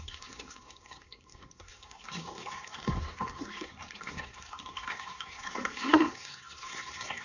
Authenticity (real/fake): fake